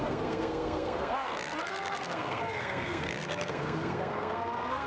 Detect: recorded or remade remade